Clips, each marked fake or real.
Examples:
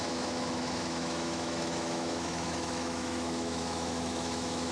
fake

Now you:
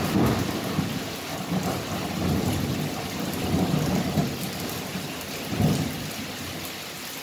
real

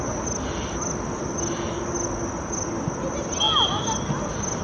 real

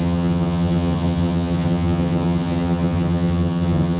fake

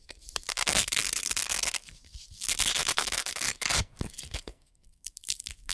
fake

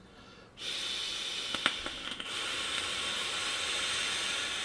real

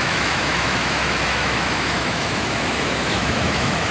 fake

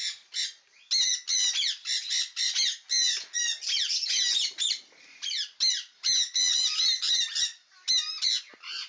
real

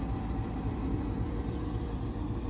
real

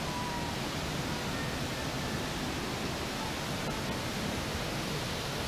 real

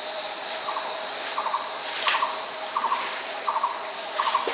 real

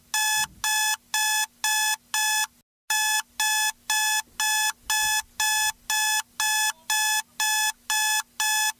real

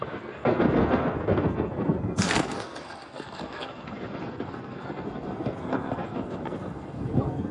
fake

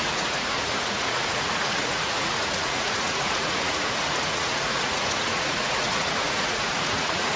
fake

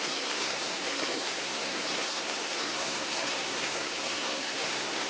fake